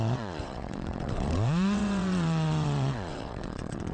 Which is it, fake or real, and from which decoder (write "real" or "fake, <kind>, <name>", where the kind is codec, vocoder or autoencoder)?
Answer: fake, vocoder, WaveNeXt